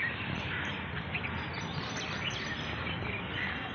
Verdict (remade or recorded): recorded